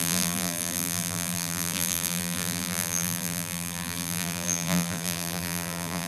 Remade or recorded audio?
remade